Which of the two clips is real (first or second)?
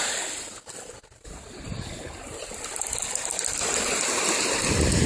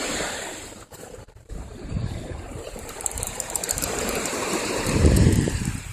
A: first